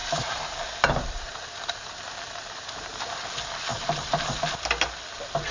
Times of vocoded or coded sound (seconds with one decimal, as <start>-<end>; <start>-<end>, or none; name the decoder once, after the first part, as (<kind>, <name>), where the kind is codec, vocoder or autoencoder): 0.0-3.2 (vocoder, BigVGAN v2); 3.7-4.6